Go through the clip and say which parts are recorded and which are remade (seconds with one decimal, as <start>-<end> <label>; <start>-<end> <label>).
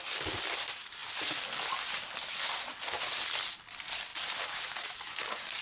0.0-5.6 recorded